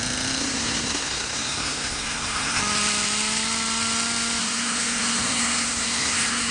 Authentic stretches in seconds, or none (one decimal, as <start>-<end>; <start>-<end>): 0.0-0.4; 2.6-4.4